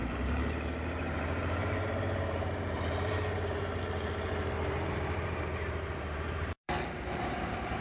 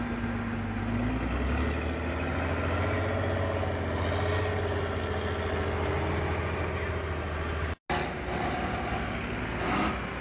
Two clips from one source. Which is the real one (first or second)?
second